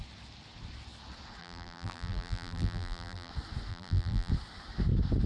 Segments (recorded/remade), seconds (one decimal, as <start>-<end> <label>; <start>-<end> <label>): 0.0-1.4 recorded; 1.4-3.3 remade; 3.3-3.7 recorded; 3.7-4.3 remade; 4.3-5.3 recorded